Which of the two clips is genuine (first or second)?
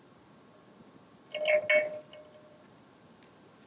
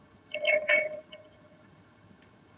first